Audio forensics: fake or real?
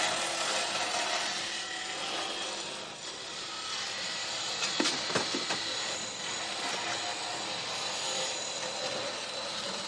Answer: real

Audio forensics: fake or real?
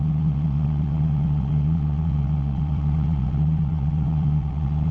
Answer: fake